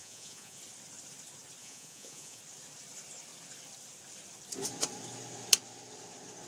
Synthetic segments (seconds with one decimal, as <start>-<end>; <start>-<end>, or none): 0.0-0.6; 1.6-2.4